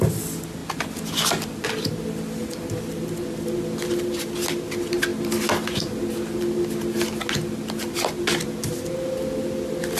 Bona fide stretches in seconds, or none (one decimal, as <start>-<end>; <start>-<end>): 0.0-10.0